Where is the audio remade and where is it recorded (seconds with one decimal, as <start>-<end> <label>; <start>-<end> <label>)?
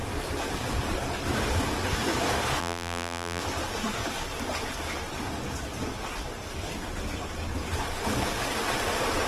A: 0.0-2.6 recorded; 2.6-3.4 remade; 3.4-9.3 recorded